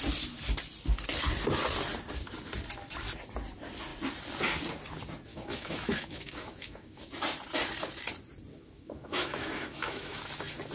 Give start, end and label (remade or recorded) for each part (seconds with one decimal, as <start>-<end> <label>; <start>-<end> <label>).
0.0-5.3 recorded; 5.3-7.1 remade; 7.1-8.5 recorded; 8.5-10.2 remade; 10.2-10.7 recorded